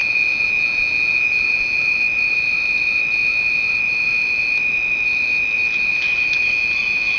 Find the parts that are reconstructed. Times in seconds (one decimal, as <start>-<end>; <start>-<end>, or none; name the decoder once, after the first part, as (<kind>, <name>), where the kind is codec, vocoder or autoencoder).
0.0-1.9 (vocoder, Vocos)